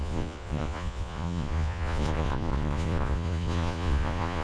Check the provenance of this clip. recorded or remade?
remade